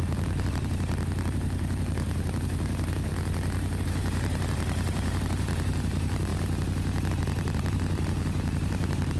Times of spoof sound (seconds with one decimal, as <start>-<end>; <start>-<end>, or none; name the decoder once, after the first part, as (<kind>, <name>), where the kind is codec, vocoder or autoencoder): 0.0-3.1 (vocoder, BigVGAN v2); 3.8-6.3; 7.1-9.2

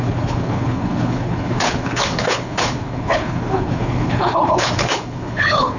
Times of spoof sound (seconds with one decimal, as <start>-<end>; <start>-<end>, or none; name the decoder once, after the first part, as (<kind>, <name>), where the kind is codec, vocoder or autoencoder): 0.0-5.8 (codec, HILCodec)